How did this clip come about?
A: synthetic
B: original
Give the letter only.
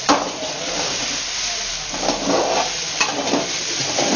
B